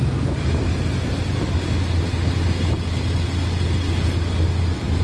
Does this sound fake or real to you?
real